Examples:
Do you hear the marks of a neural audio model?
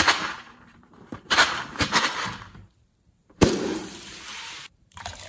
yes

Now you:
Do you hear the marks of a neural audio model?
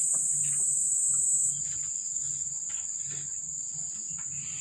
no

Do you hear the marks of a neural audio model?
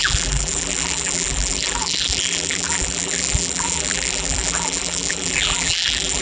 yes